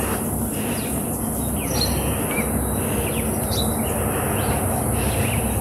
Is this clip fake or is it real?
real